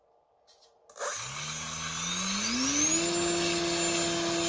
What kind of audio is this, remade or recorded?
recorded